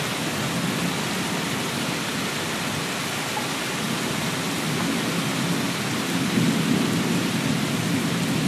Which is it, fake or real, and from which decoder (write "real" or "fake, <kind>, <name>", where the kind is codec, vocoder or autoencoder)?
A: real